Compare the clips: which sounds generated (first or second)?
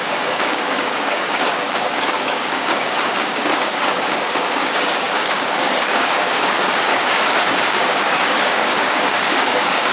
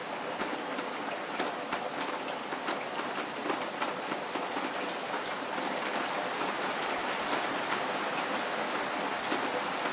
first